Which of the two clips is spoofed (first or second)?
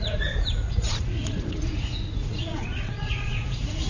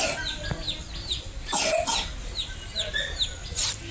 first